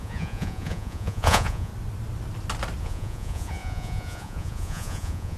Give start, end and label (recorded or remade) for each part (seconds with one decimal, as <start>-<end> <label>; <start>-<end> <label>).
0.0-1.7 remade; 1.7-2.8 recorded; 2.8-5.4 remade